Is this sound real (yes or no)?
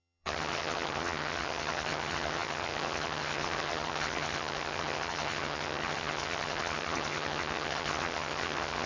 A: no